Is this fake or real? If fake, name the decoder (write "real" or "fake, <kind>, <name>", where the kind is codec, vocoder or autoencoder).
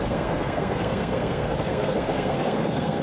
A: fake, codec, SNAC